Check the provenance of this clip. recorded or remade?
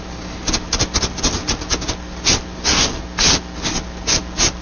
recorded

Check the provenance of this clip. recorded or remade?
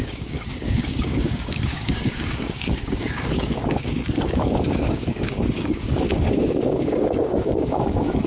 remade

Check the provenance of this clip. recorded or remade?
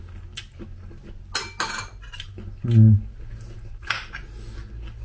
recorded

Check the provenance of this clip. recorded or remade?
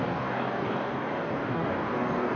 remade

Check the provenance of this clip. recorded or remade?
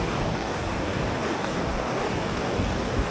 remade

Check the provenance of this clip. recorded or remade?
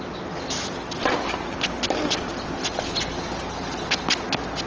recorded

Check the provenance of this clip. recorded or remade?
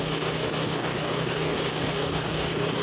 remade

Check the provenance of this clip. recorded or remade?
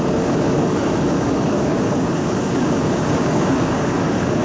remade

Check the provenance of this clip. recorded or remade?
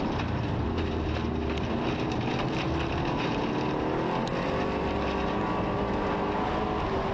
recorded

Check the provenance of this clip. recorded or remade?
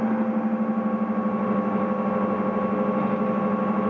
recorded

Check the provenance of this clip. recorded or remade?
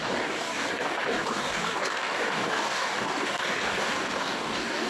remade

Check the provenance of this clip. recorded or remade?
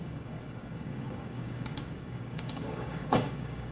remade